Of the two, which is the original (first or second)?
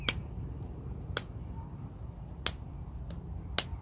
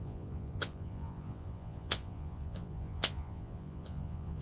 first